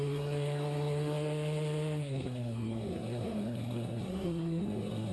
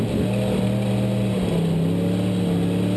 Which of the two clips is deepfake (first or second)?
first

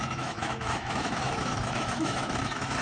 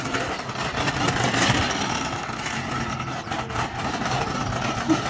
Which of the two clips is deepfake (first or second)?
first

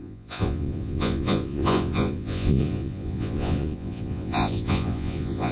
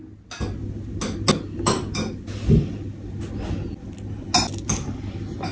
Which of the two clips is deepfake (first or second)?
first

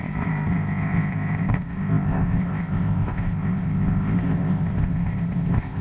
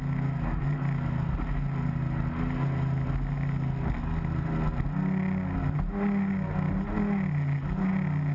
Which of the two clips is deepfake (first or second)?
first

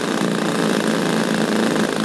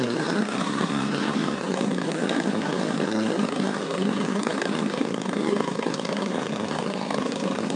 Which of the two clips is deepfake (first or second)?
second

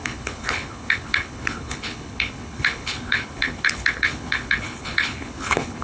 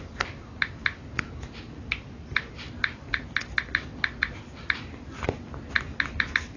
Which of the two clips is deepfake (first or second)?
first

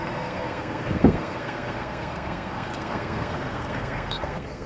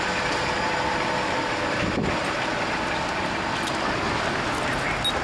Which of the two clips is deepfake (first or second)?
first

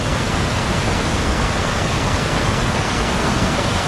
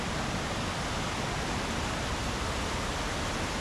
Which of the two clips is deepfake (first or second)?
first